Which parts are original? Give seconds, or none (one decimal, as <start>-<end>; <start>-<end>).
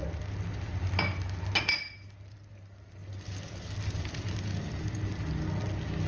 0.0-6.1